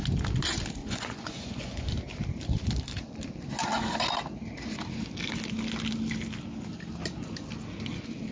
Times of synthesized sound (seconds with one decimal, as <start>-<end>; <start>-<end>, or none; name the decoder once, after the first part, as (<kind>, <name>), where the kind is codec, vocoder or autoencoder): 0.8-1.9 (vocoder, Vocos)